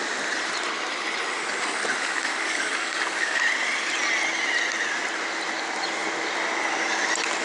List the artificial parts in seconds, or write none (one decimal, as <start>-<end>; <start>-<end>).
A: 2.0-3.4